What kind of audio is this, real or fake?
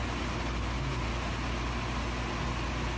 real